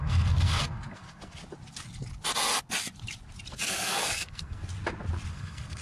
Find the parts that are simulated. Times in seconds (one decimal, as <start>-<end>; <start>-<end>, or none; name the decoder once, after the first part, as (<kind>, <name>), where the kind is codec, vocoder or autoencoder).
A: 0.0-1.4 (codec, SNAC); 3.5-4.7; 5.3-5.8